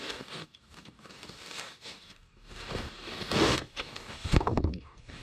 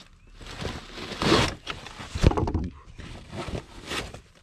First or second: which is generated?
first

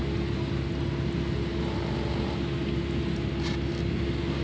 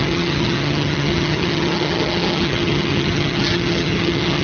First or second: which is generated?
second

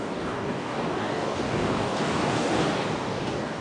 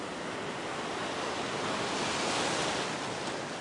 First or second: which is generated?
first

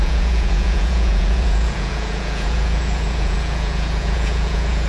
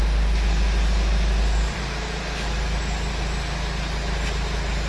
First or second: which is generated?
first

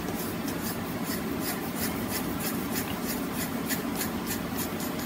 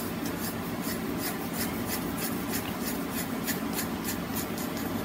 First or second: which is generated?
first